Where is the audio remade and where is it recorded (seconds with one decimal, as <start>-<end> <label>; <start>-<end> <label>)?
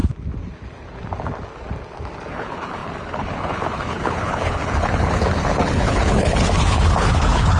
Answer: 0.0-2.3 recorded; 2.3-7.6 remade